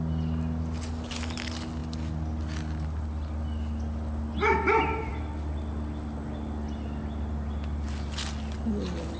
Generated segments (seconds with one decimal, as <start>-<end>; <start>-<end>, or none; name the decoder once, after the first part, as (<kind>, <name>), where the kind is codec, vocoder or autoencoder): none